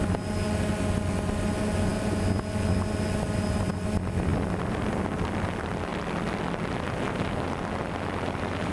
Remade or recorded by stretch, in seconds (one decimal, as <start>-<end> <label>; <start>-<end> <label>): 0.0-8.7 recorded